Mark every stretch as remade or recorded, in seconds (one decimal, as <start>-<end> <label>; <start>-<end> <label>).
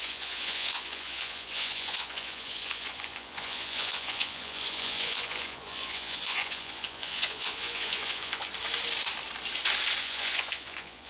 0.0-8.5 remade; 8.5-10.0 recorded; 10.0-11.1 remade